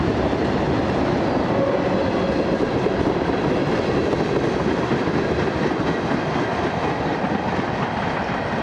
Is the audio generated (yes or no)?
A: no